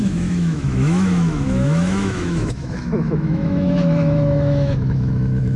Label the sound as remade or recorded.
remade